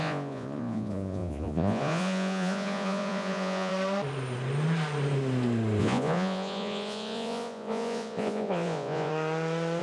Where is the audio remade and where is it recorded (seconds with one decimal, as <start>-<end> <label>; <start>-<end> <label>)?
0.0-3.7 remade; 3.7-5.8 recorded; 5.8-9.1 remade; 9.1-9.8 recorded